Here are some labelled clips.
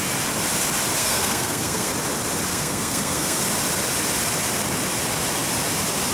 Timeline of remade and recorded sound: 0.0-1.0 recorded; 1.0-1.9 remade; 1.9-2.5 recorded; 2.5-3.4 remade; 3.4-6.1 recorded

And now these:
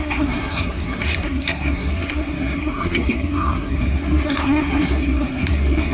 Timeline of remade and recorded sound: 0.0-5.9 remade